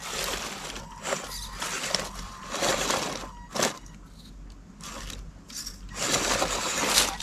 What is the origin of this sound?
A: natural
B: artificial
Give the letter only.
A